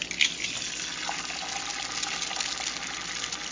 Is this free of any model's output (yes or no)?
yes